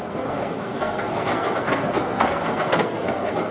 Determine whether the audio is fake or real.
fake